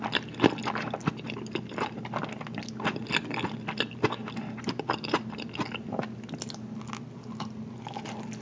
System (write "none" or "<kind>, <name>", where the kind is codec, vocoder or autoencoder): none